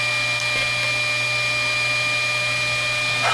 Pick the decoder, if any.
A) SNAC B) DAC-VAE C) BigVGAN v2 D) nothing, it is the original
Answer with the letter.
D